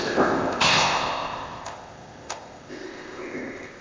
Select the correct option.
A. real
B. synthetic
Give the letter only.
B